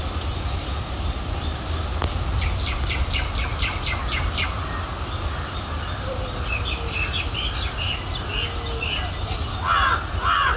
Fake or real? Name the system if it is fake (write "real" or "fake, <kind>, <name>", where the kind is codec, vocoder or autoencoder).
real